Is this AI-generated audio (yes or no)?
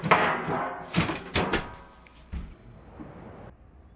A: no